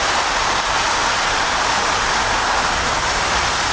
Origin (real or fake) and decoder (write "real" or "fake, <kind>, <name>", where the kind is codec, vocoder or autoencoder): real